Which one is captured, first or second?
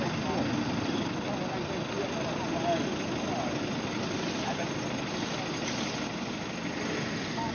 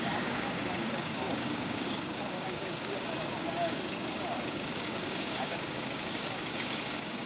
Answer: first